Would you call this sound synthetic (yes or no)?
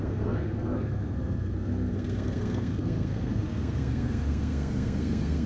yes